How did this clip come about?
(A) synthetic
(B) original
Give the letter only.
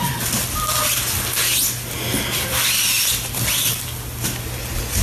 B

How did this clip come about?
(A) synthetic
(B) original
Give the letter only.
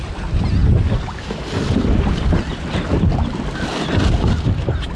B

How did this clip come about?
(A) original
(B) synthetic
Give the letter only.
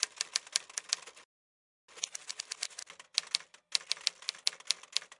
A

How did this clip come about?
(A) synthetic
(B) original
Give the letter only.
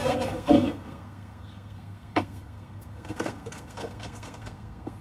A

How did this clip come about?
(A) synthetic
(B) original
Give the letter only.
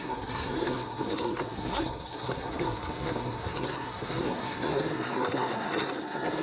A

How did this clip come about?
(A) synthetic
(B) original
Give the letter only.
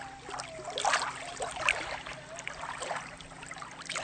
B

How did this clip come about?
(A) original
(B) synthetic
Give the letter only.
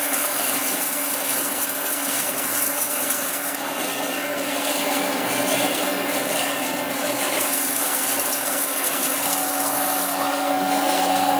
B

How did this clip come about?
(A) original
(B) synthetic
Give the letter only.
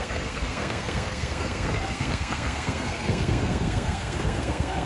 B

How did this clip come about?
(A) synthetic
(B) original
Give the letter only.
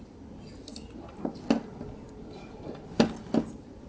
B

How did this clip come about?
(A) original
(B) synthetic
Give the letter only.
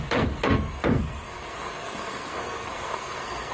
B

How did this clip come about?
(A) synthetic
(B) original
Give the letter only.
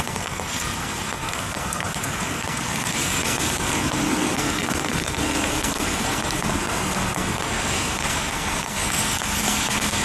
A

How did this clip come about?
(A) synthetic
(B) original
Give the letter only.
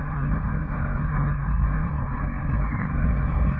A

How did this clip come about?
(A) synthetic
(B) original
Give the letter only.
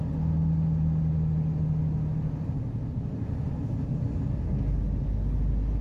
B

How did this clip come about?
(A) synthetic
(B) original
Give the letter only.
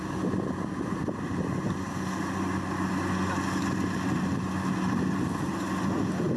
B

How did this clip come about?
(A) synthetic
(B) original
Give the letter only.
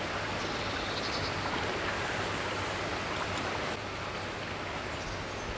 B